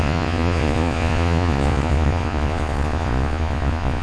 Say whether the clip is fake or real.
fake